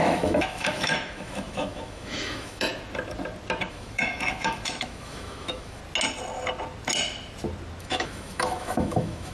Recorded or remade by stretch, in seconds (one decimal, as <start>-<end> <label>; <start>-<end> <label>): 0.0-2.7 remade; 2.7-3.7 recorded; 3.7-5.8 remade; 5.8-7.8 recorded; 7.8-9.3 remade